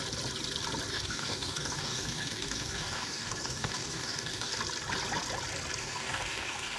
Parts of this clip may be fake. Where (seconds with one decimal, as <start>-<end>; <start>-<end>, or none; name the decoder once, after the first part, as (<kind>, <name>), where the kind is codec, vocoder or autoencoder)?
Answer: 0.9-4.6 (codec, DAC); 5.8-6.8